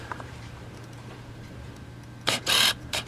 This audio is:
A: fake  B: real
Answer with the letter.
A